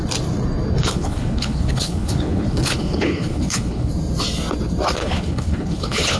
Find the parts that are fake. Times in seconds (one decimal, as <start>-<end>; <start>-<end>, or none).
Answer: 0.8-3.9; 5.0-6.2